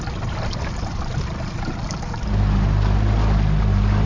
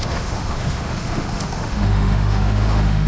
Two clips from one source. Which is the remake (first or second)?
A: second